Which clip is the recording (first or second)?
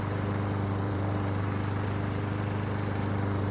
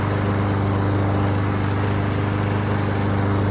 second